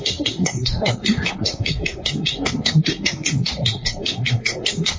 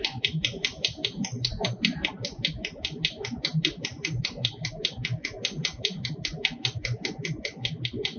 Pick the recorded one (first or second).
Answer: second